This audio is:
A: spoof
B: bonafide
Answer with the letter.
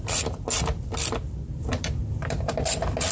A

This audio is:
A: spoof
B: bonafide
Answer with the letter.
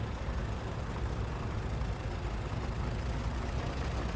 B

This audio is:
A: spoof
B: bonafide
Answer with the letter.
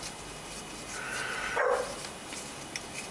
B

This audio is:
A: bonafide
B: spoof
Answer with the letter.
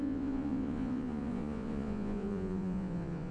B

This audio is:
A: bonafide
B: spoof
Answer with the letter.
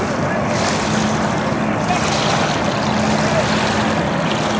A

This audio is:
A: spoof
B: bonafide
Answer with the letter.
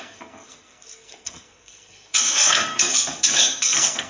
A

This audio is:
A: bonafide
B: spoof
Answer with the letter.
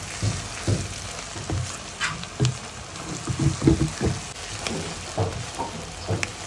A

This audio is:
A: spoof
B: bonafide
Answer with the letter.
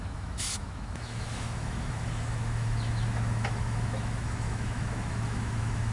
A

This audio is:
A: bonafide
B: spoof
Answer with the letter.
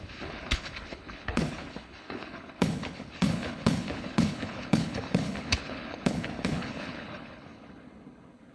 B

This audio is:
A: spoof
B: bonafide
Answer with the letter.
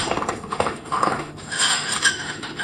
A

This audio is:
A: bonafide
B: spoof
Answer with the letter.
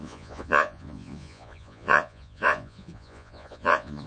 B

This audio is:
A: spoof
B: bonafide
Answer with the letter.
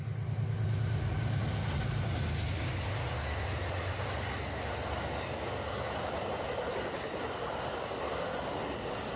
B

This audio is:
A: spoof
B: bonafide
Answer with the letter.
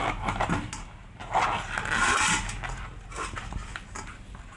B